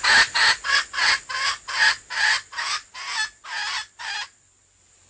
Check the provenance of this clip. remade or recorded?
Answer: recorded